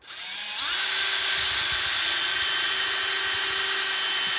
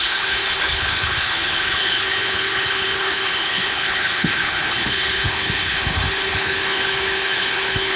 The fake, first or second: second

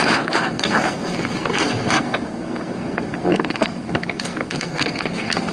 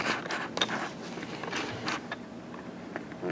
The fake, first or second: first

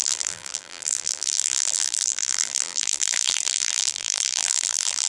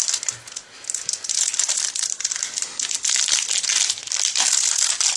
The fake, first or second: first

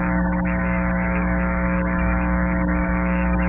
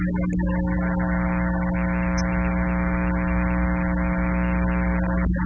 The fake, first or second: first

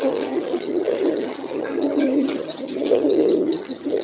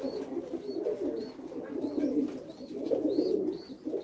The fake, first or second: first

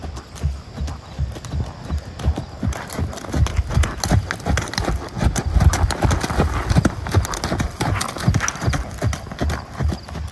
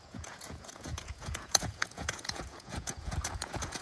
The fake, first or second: second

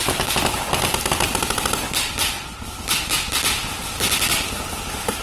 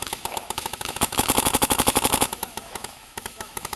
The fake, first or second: second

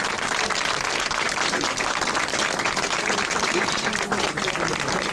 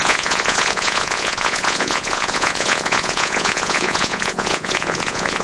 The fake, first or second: second